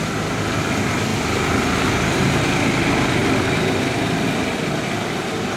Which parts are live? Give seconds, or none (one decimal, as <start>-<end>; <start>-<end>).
1.1-1.8